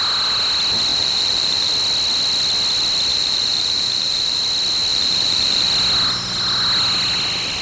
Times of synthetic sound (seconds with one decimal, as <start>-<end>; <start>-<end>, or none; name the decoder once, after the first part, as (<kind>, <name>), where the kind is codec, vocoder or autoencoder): 0.9-1.7 (vocoder, BigVGAN v2); 3.1-4.4; 4.9-5.7